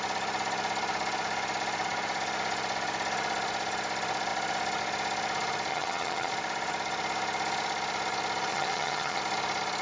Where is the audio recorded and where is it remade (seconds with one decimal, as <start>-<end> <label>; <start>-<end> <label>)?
0.0-5.7 recorded; 5.7-6.3 remade; 6.3-8.5 recorded; 8.5-9.2 remade; 9.2-9.8 recorded